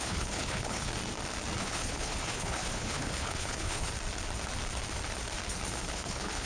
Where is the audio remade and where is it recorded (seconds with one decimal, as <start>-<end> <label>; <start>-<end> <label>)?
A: 0.0-0.9 remade; 0.9-1.6 recorded; 1.6-3.9 remade; 3.9-5.9 recorded; 5.9-6.5 remade